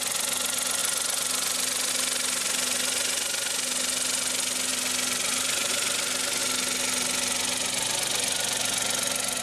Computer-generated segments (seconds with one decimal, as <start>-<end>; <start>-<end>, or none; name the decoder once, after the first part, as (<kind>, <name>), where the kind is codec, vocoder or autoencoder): none